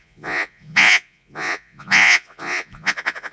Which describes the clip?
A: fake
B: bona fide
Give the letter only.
A